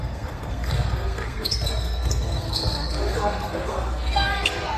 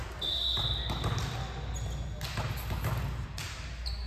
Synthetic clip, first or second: first